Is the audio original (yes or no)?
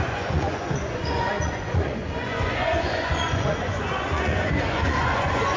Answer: no